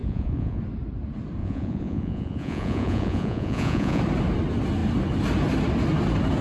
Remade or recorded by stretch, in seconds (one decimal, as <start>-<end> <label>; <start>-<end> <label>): 0.0-0.6 remade; 0.6-1.4 recorded; 1.4-4.0 remade; 4.0-6.4 recorded